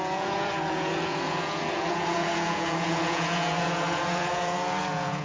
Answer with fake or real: fake